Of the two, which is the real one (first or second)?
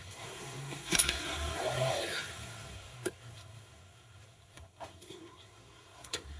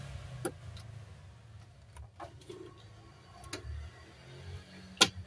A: second